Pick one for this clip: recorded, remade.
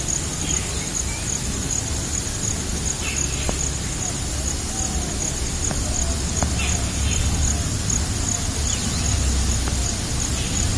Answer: recorded